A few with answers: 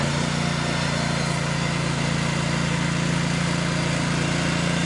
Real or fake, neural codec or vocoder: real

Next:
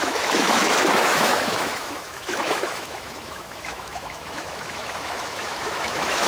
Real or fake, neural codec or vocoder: fake, autoencoder, DAC-VAE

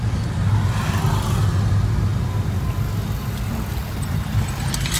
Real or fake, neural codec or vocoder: real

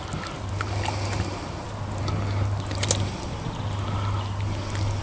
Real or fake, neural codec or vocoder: real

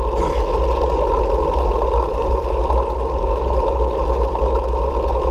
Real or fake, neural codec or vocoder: real